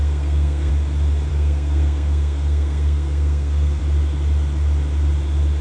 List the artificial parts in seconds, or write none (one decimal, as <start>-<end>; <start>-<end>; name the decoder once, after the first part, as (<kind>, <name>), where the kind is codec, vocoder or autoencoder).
0.0-0.7 (codec, SNAC); 1.3-3.8